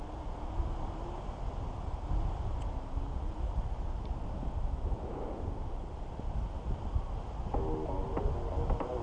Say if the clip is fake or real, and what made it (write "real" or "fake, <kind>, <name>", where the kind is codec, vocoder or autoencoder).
real